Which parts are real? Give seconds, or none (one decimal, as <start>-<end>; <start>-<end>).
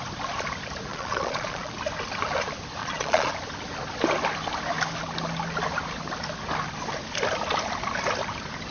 0.0-0.9; 1.7-2.8; 3.3-8.7